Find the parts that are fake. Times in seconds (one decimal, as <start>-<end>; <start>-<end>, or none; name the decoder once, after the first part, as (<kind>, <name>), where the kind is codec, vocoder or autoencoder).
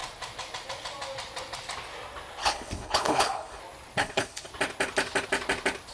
2.4-3.6 (codec, HILCodec); 4.0-4.5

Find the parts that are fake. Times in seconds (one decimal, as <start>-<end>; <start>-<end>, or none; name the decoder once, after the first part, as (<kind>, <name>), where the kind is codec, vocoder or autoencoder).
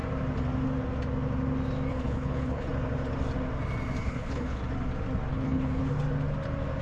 1.9-2.7 (codec, HILCodec); 4.0-4.6; 5.3-5.8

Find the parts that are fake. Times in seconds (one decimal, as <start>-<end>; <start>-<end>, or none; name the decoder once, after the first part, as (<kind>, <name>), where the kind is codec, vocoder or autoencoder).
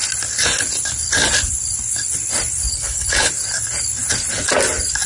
2.7-3.3 (codec, HILCodec)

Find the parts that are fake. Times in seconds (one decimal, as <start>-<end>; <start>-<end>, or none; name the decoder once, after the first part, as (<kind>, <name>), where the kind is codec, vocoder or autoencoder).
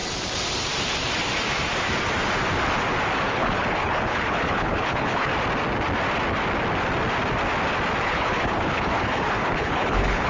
3.3-5.3 (codec, HILCodec); 8.0-10.3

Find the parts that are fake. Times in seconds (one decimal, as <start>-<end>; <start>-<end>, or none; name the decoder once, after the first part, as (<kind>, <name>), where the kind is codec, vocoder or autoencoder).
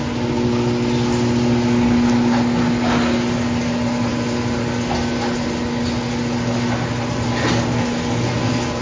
none